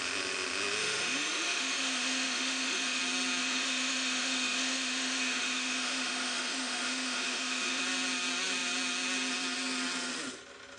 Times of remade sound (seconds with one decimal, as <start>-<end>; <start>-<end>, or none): 0.8-3.0; 3.4-7.8